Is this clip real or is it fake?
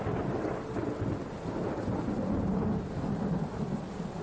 real